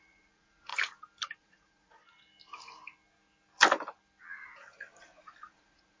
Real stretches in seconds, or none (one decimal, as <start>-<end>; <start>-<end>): 0.7-1.4; 2.0-5.0